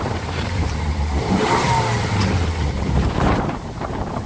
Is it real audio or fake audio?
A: fake